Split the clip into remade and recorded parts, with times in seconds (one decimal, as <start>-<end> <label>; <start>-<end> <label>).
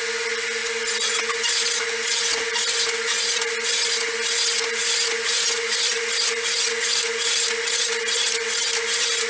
0.0-9.3 recorded